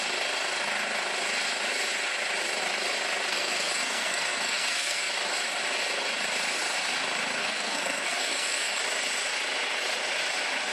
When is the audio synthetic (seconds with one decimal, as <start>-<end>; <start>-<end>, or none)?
3.3-5.1; 7.4-8.8